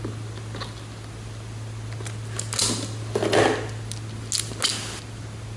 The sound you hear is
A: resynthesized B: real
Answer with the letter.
B